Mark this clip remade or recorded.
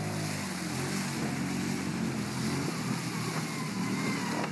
recorded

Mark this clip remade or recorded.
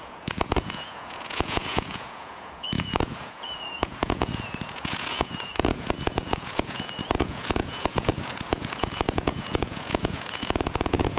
remade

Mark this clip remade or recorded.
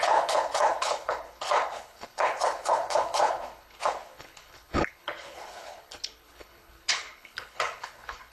remade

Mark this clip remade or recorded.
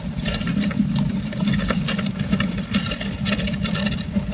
remade